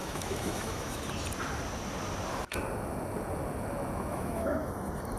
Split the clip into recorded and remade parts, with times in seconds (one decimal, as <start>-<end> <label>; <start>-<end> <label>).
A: 0.0-1.0 remade; 1.0-4.1 recorded; 4.1-4.7 remade; 4.7-5.2 recorded